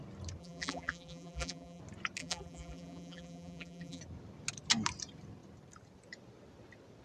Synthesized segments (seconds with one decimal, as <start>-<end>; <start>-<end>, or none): 0.4-1.8; 2.2-4.0